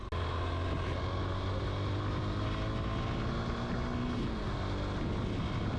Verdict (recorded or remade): recorded